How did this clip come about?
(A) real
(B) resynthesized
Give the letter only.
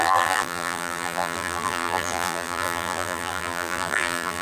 B